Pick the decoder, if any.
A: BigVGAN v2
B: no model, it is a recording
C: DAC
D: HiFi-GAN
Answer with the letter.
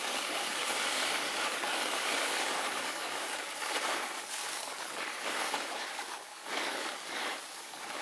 C